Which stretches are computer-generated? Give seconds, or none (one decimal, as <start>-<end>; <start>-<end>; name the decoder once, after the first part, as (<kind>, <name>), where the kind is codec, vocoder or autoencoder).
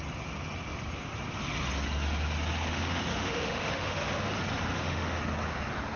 2.7-4.3 (autoencoder, DAC-VAE); 4.7-5.2